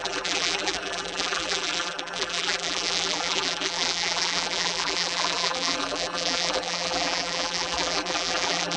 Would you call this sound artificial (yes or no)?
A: yes